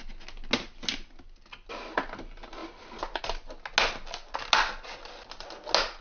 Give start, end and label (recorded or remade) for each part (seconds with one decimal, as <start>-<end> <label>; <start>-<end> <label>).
0.0-6.0 recorded